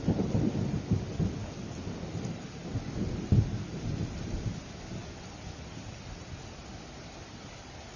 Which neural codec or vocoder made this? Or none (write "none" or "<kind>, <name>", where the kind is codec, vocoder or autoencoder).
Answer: none